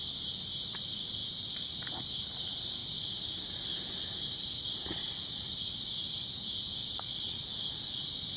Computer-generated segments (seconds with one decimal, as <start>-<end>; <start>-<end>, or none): 6.8-7.4

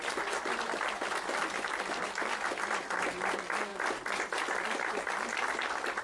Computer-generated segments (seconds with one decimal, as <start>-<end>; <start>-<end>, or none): none

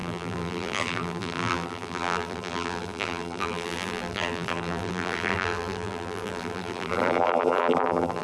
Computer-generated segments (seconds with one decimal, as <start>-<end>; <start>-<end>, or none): 0.0-8.2

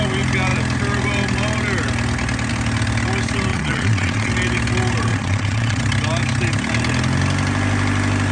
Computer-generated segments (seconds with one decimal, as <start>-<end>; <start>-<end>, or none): 3.5-4.3; 5.1-5.8

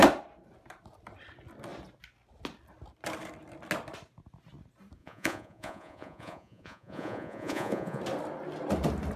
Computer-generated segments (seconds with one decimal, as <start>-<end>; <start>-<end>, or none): 5.0-8.0

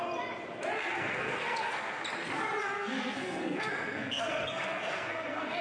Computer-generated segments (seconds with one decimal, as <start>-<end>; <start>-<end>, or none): 0.8-2.0; 2.6-5.6

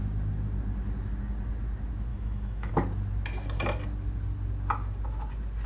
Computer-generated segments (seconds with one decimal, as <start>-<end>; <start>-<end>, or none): 2.1-2.7

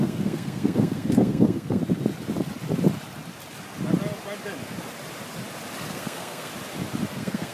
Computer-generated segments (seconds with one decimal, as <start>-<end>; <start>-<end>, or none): 0.0-1.8; 5.9-6.5; 7.1-7.5